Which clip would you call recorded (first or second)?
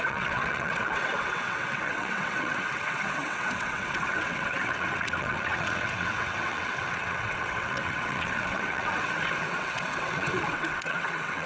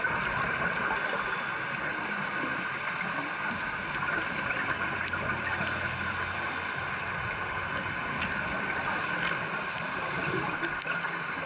second